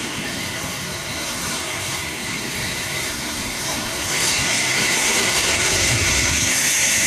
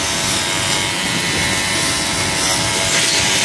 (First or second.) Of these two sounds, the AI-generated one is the first